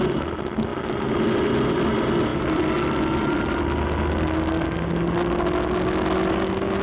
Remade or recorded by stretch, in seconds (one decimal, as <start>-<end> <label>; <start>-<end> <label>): 0.0-6.8 recorded